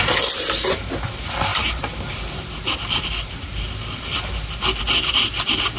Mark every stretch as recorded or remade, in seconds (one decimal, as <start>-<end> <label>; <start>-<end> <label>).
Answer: 0.0-1.5 recorded; 1.5-2.0 remade; 2.0-5.8 recorded